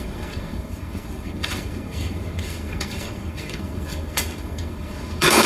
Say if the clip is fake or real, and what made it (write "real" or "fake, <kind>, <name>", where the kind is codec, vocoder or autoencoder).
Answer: fake, codec, SNAC